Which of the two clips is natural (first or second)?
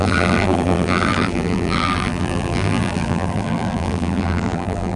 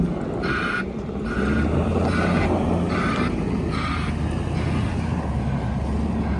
second